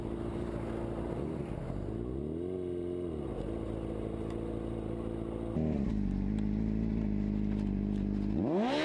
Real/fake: real